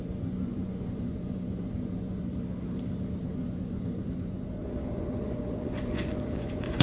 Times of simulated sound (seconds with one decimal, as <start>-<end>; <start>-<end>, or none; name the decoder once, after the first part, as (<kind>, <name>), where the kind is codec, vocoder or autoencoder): 0.0-2.3 (vocoder, Vocos); 3.2-6.8